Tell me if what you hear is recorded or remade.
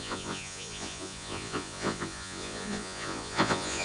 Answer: remade